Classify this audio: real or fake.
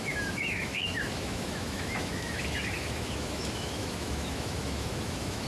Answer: fake